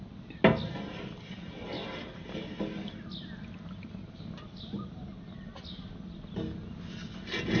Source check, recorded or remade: recorded